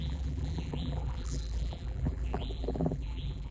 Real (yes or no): no